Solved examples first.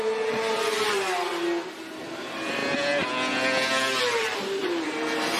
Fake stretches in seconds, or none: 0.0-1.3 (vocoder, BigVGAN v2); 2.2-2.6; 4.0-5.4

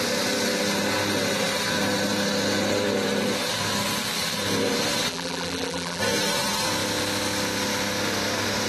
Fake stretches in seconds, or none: 5.1-6.0 (vocoder, BigVGAN v2)